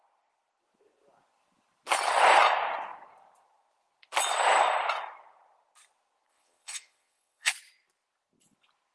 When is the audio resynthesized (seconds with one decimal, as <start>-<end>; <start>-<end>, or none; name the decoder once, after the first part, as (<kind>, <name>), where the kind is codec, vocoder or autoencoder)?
6.3-7.5 (vocoder, WaveNeXt)